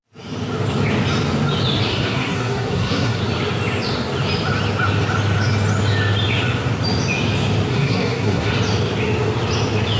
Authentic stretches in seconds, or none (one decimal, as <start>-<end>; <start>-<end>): 0.0-1.9; 3.2-7.7; 8.5-10.0